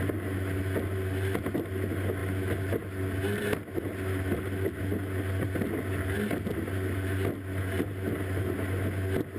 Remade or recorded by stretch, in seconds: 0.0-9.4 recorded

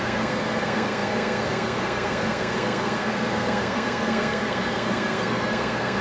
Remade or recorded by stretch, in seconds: 0.0-6.0 remade

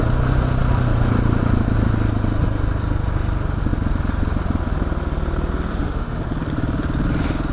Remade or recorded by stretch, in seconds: 0.0-5.7 recorded; 5.7-6.2 remade; 6.2-7.5 recorded

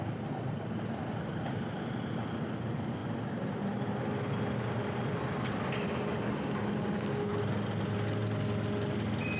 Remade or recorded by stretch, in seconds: 0.0-9.4 recorded

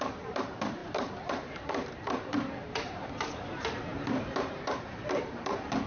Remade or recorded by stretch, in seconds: 0.0-5.9 remade

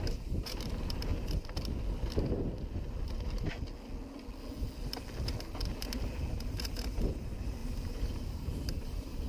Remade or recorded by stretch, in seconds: 0.0-1.1 remade; 1.1-6.4 recorded; 6.4-9.3 remade

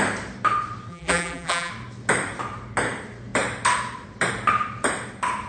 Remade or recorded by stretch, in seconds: 0.0-0.9 recorded; 0.9-1.7 remade; 1.7-5.5 recorded

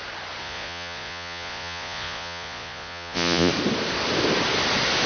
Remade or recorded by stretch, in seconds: 0.0-0.4 recorded; 0.4-3.5 remade; 3.5-5.1 recorded